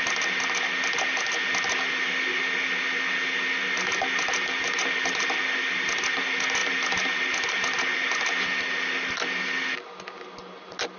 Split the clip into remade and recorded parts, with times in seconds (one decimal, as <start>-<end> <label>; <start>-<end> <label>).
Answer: 0.0-11.0 recorded